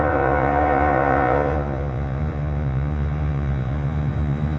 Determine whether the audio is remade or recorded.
remade